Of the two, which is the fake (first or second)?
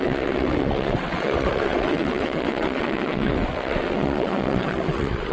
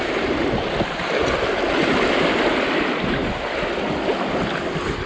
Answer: first